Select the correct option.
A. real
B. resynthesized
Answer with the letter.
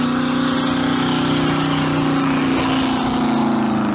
A